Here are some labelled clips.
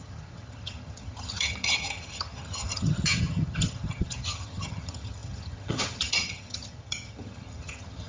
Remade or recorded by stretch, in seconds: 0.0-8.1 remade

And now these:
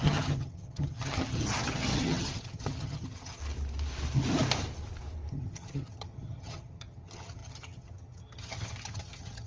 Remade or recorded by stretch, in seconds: 0.0-3.4 remade; 3.4-5.3 recorded; 5.3-9.5 remade

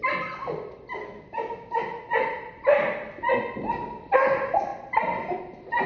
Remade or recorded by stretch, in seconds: 0.0-5.9 recorded

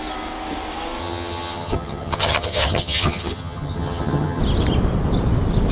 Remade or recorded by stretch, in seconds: 0.0-1.0 recorded; 1.0-4.4 remade; 4.4-5.7 recorded

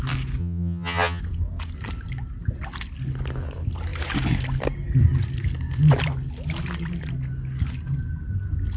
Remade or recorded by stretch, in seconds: 0.0-0.4 recorded; 0.4-1.2 remade; 1.2-8.8 recorded